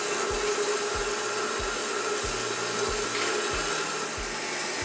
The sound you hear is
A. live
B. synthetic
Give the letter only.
A